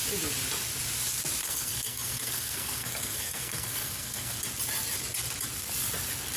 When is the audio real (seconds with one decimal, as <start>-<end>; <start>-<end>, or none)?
0.0-1.4; 4.4-6.4